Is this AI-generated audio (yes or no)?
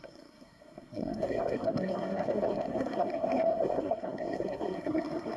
yes